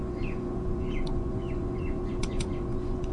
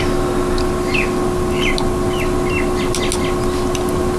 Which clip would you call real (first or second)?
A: second